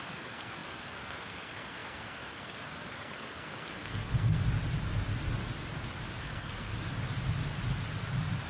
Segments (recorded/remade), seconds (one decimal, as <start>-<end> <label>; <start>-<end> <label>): 0.0-4.4 remade; 4.4-6.2 recorded; 6.2-6.7 remade; 6.7-8.5 recorded